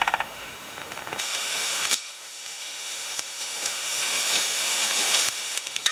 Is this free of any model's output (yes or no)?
no